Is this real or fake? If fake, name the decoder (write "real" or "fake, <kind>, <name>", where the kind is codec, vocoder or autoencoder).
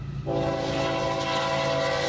real